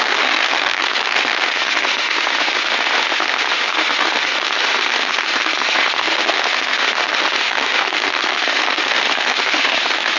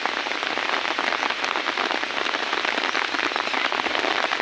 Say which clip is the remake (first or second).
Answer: first